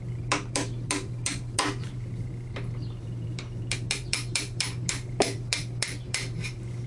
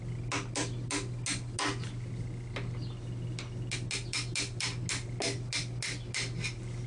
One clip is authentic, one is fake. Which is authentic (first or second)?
second